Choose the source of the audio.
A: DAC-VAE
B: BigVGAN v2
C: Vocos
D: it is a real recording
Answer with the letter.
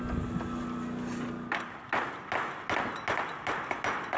D